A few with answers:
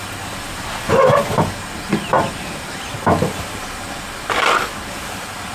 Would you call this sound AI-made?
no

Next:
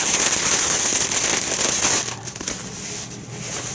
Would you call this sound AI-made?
no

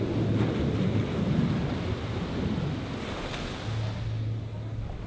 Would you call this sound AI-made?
no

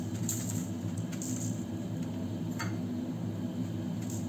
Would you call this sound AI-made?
yes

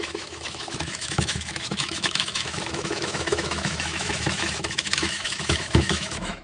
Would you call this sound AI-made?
yes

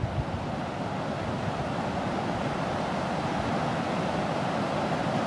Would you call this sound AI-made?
no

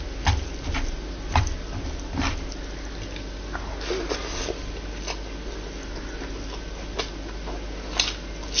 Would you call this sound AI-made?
no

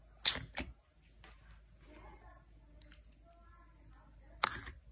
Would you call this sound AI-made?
no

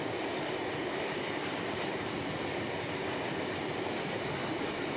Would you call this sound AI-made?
no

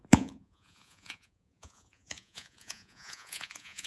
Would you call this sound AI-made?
yes